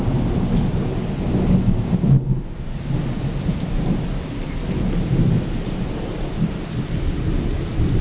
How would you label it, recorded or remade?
recorded